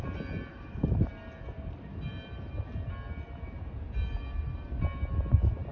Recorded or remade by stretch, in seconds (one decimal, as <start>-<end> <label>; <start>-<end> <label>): 0.0-0.5 recorded; 0.5-1.1 remade; 1.1-5.7 recorded